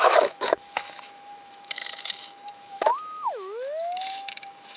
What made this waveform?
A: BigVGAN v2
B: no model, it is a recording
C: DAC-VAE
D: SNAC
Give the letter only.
C